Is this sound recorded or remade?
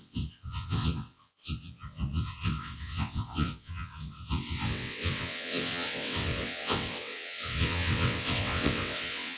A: remade